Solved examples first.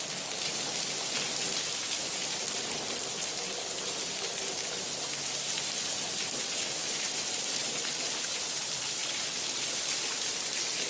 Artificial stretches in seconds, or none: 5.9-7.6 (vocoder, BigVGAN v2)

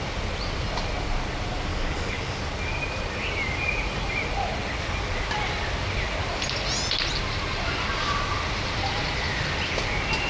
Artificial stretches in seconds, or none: 1.7-2.4 (codec, DAC)

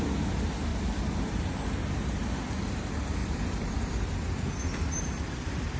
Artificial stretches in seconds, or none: 0.7-1.4 (vocoder, BigVGAN v2); 3.2-5.0

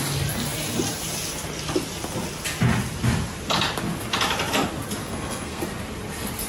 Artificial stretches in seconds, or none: 5.0-5.6 (codec, SNAC)

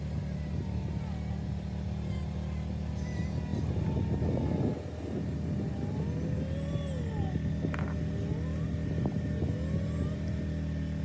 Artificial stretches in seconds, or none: none

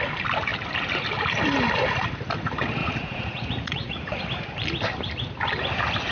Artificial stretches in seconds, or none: 2.8-4.2 (vocoder, Vocos)

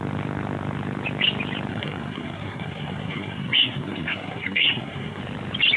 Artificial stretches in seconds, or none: 1.7-5.2 (codec, SNAC)